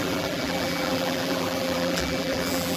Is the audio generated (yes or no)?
yes